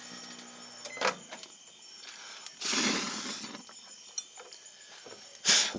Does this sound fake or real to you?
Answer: real